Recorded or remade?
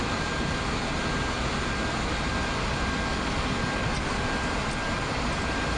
recorded